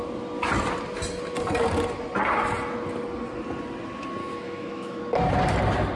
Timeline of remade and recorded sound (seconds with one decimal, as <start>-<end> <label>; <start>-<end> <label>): 0.0-4.2 recorded; 4.2-5.0 remade; 5.0-6.0 recorded